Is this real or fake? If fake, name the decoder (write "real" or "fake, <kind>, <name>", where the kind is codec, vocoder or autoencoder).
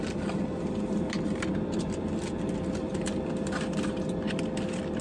real